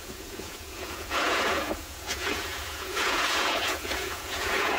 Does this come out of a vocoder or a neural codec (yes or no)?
yes